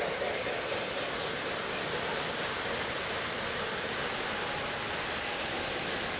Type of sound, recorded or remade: recorded